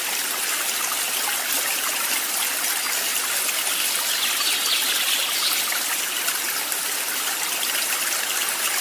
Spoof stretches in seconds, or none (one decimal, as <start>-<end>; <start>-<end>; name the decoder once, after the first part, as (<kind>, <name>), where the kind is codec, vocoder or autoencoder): none